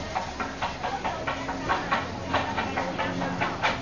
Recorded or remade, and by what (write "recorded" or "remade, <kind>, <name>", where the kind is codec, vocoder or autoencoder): recorded